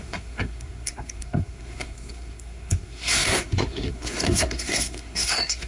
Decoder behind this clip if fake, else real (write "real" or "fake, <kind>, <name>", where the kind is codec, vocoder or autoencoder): fake, codec, SNAC